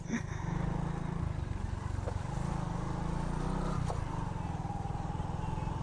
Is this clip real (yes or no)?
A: yes